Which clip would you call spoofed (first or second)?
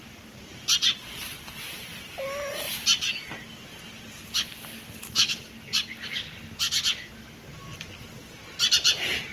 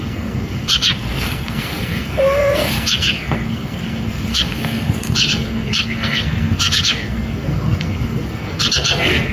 second